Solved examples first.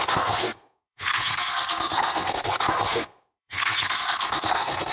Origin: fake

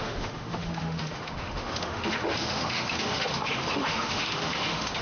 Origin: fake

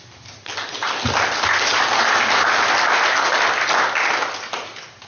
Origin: real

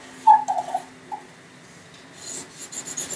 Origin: real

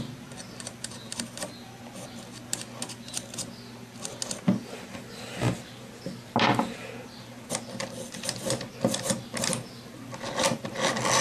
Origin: real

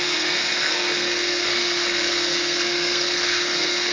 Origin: fake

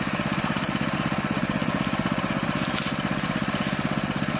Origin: real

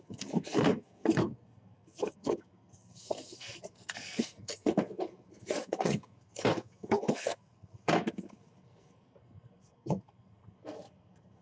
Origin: fake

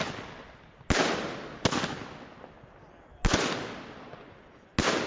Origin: real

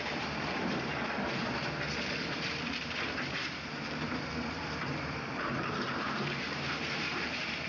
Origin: fake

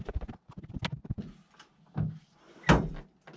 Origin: real